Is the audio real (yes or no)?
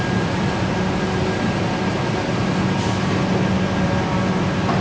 yes